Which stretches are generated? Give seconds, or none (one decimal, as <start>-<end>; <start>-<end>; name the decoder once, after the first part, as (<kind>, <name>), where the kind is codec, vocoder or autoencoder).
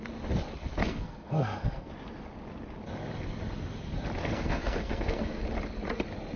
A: 0.8-1.9 (codec, SNAC); 4.2-5.4